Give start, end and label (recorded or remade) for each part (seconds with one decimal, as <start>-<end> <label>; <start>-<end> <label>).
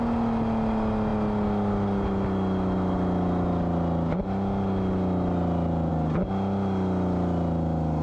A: 0.0-8.0 recorded